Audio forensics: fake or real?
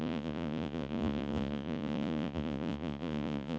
fake